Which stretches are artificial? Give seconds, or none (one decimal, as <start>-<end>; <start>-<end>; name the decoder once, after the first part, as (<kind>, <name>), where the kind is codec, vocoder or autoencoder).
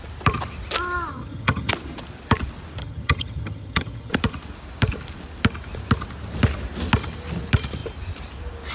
1.1-1.7 (vocoder, HiFi-GAN); 2.8-4.1